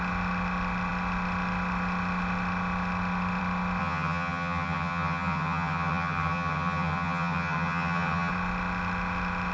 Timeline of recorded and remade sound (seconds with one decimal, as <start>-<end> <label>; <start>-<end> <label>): 0.0-3.8 recorded; 3.8-8.3 remade; 8.3-9.5 recorded